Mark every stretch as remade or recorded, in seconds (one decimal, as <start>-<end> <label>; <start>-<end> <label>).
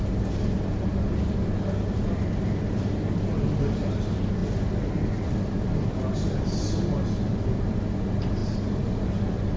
0.0-9.6 recorded